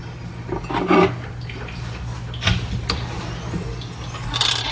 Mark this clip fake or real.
real